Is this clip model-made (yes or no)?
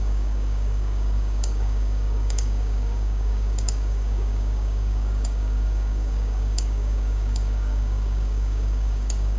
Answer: yes